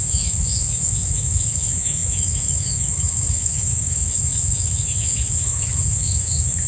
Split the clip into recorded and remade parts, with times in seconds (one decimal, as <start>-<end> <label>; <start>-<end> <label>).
0.0-6.7 remade